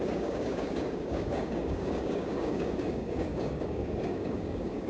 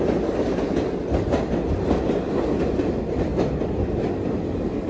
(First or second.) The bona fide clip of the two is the second